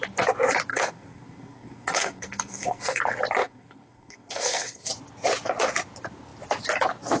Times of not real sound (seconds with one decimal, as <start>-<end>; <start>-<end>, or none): 0.7-3.0; 3.4-4.9